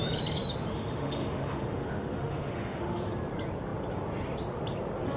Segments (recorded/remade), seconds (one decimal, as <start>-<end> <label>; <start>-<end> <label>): 0.0-0.7 recorded; 0.7-3.0 remade; 3.0-5.2 recorded